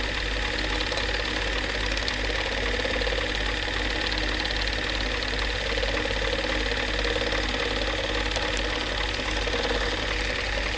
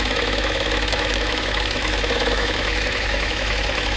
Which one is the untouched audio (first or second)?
first